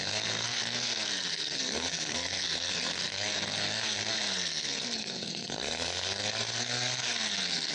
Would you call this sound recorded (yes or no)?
no